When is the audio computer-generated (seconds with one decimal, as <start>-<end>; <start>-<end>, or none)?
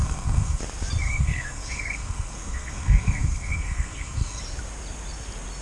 0.0-0.6; 1.0-4.4